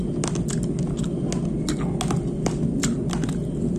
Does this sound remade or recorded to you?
recorded